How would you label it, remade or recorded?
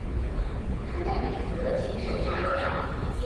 remade